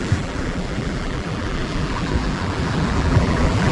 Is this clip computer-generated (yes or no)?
yes